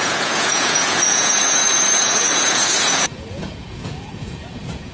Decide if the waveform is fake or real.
fake